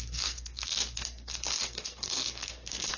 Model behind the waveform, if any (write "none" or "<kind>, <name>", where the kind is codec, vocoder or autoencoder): codec, SNAC